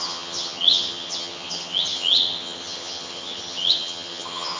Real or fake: fake